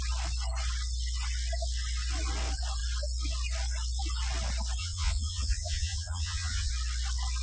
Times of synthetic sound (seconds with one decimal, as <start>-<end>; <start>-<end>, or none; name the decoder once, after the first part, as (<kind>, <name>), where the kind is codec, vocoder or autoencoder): 4.8-6.7 (vocoder, Vocos)